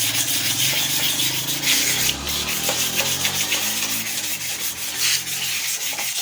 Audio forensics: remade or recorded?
recorded